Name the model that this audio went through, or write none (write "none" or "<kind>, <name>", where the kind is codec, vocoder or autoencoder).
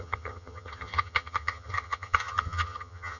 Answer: vocoder, HiFi-GAN